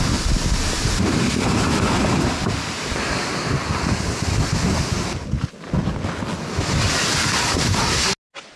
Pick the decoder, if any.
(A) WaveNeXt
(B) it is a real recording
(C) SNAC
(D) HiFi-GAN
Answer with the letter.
B